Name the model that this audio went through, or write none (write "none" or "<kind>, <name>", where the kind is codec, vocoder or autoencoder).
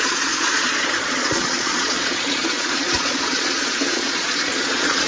vocoder, Vocos